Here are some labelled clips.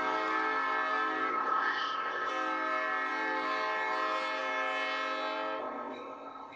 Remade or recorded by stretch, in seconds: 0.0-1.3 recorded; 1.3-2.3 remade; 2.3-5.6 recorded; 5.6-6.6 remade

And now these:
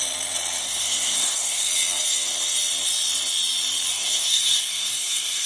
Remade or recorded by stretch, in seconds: 0.0-0.6 recorded; 0.6-1.7 remade; 1.7-3.9 recorded; 3.9-5.5 remade

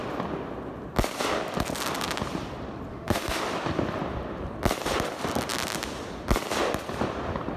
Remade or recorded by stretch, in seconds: 0.0-2.9 recorded; 2.9-3.4 remade; 3.4-7.6 recorded

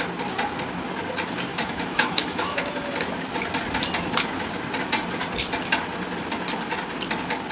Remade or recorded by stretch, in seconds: 0.0-1.5 recorded; 1.5-2.6 remade; 2.6-7.5 recorded